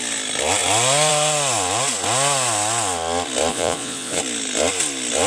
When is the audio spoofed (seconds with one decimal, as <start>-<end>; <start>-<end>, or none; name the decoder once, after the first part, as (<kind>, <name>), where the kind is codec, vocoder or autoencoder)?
3.5-4.2 (vocoder, Vocos)